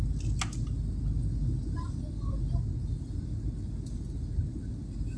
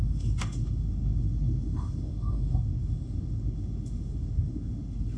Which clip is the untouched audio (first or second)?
first